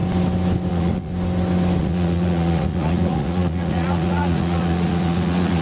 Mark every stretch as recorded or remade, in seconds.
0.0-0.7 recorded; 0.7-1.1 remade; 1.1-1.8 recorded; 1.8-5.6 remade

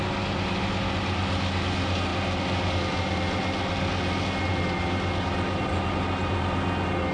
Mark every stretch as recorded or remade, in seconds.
0.0-7.1 recorded

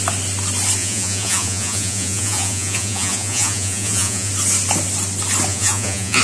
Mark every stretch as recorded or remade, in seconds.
0.0-0.8 recorded; 0.8-4.3 remade; 4.3-5.5 recorded; 5.5-6.2 remade